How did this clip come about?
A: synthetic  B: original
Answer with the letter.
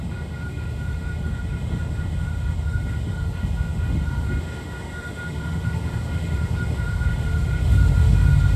A